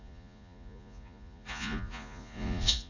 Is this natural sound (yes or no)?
no